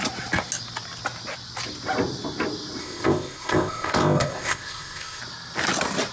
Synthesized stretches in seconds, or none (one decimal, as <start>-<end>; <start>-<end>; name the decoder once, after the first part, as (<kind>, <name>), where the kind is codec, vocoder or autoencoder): 2.8-5.2 (codec, ZipCodec)